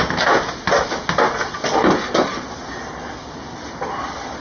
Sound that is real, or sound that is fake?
real